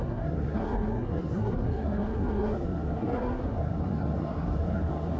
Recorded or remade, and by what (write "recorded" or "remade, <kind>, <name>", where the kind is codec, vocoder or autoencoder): remade, codec, SNAC